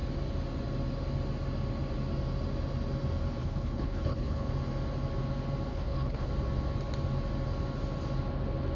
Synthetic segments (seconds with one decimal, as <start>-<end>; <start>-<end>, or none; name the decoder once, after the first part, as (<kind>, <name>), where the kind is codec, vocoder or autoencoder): 3.4-4.5 (codec, HILCodec); 5.7-6.3